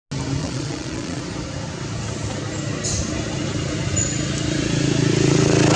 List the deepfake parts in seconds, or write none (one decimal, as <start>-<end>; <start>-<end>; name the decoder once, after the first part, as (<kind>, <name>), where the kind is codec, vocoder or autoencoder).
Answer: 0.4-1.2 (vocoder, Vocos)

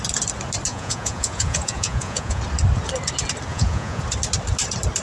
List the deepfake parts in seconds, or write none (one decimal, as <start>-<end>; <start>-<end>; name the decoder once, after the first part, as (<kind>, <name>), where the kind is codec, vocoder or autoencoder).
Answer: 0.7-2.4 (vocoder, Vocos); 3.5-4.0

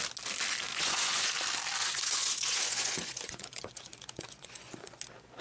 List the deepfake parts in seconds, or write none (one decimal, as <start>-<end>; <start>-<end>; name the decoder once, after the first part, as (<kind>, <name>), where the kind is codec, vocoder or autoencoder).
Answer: 0.7-1.3 (vocoder, Vocos); 1.8-5.0

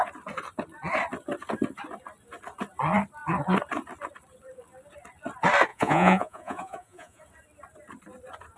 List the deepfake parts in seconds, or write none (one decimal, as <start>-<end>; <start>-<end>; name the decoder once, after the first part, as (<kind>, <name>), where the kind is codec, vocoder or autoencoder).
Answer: 5.7-7.2 (vocoder, Vocos)

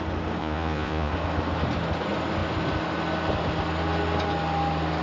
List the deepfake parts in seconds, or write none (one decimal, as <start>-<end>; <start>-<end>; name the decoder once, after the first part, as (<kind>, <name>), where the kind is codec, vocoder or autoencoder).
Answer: 0.4-1.1 (vocoder, Vocos)

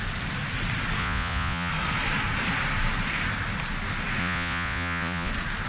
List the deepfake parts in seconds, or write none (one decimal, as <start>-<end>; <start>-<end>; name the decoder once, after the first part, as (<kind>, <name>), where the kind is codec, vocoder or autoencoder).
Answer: 1.0-1.7 (vocoder, Vocos); 4.2-5.3

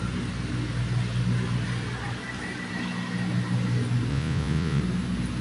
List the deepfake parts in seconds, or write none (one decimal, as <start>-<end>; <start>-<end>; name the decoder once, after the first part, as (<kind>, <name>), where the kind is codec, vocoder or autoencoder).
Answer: 4.1-4.8 (vocoder, Vocos)

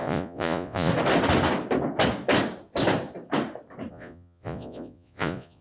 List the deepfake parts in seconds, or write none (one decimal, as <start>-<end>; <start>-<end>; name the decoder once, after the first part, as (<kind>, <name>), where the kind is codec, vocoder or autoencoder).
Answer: 0.0-0.9 (vocoder, Vocos); 3.9-5.6